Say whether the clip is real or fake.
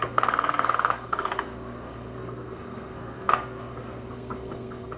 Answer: fake